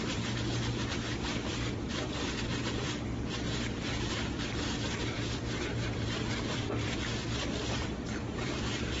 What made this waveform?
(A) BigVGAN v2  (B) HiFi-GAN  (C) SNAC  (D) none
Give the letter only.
A